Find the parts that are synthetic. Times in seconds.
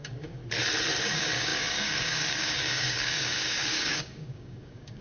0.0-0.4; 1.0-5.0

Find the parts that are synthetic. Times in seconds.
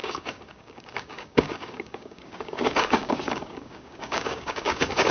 0.0-5.1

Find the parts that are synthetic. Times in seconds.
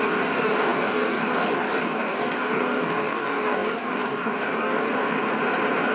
0.0-5.2